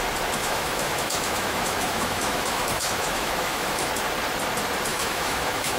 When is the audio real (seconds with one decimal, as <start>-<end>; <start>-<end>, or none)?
0.0-0.4; 3.9-4.9